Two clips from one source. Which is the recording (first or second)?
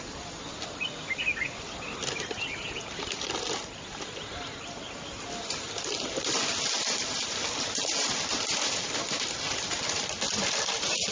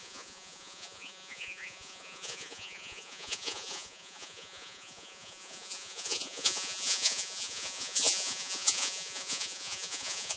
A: first